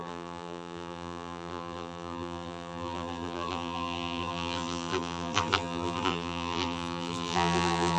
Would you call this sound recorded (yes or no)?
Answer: no